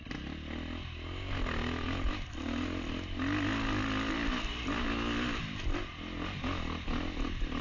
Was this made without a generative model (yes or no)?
yes